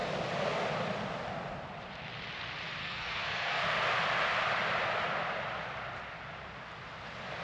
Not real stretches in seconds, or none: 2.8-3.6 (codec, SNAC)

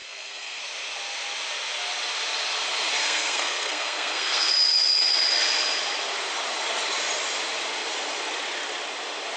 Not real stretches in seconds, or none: 0.0-0.6 (codec, SNAC); 3.0-4.5

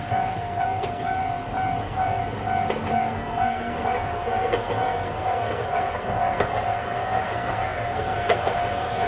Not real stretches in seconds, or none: 0.0-1.2 (codec, SNAC); 1.8-2.2; 2.9-9.1